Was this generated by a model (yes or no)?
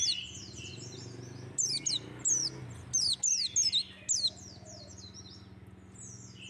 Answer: no